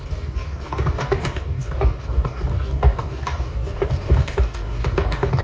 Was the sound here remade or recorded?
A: remade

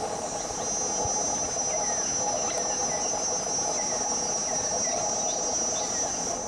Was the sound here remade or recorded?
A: recorded